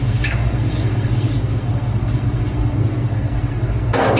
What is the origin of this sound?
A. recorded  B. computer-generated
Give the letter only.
B